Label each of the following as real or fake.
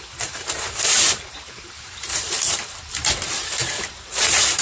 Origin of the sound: fake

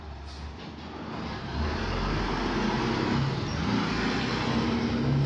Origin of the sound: real